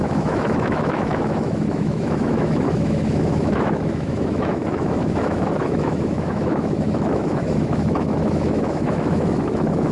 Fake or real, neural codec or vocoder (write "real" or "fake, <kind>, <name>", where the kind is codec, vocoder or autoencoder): fake, autoencoder, DAC-VAE